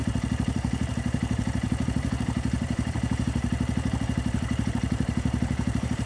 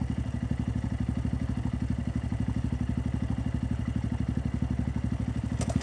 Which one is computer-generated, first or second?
first